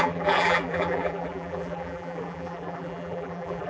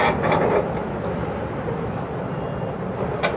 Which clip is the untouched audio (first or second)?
second